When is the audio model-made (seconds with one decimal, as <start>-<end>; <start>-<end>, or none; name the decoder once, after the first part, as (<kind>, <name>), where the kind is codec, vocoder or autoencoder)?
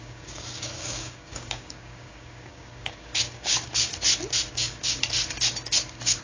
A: 0.0-3.9 (codec, DAC); 4.5-5.0; 5.8-6.2